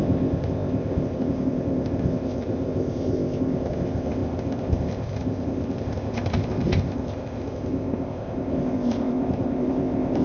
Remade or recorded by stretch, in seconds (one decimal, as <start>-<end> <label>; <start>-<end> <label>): 0.0-10.2 remade